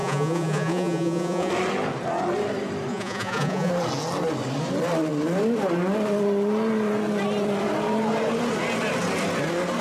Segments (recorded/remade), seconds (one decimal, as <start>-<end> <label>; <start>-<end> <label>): 0.0-1.5 remade; 1.5-2.9 recorded; 2.9-3.7 remade; 3.7-9.8 recorded